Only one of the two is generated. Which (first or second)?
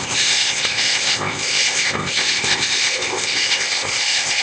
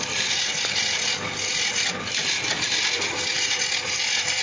first